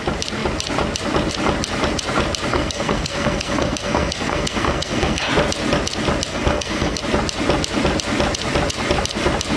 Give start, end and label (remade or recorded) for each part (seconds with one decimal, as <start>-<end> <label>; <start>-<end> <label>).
0.0-2.5 recorded; 2.5-5.3 remade; 5.3-6.3 recorded; 6.3-7.0 remade; 7.0-9.6 recorded